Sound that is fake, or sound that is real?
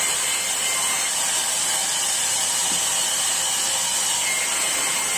real